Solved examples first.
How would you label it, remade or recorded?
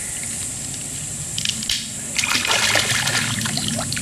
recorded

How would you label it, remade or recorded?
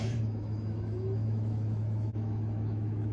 remade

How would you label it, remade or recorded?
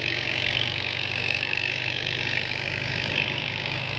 remade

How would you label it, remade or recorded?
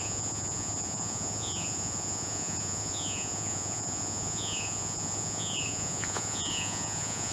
remade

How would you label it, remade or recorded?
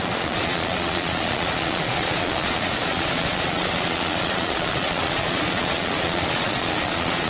remade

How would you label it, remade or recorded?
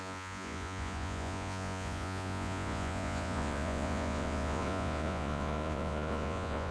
remade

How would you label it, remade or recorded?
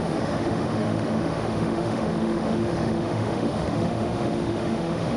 remade